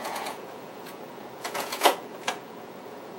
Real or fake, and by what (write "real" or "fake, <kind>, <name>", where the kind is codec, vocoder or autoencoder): fake, vocoder, Vocos